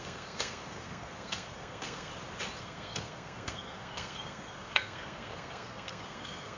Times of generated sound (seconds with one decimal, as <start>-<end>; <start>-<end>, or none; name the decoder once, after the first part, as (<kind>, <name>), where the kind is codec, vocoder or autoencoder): 0.0-2.1 (codec, SNAC); 2.6-6.6

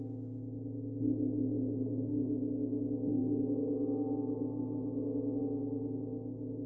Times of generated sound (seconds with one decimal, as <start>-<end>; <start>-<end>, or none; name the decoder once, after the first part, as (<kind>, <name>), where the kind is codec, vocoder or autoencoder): none

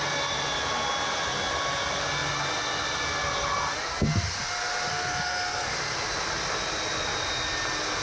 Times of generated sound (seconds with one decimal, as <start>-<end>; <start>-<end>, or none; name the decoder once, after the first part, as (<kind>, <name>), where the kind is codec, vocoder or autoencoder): 4.9-5.7 (codec, SNAC)

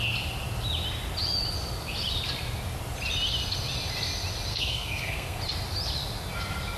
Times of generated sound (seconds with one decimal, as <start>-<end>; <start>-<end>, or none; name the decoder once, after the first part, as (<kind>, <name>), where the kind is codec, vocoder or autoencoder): 4.5-5.4 (codec, SNAC)